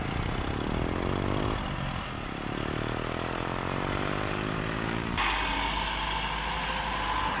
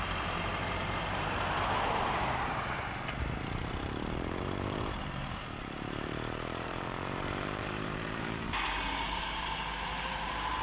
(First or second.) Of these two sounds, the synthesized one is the second